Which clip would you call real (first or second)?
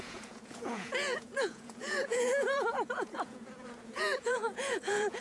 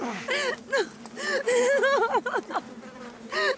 second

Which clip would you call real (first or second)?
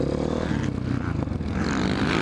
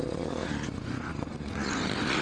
first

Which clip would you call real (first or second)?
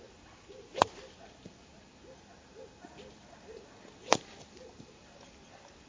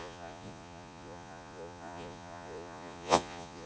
first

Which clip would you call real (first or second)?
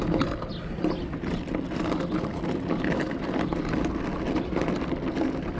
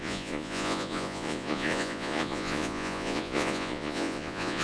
first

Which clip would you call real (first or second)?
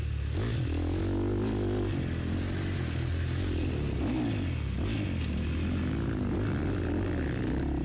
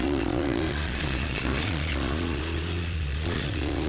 first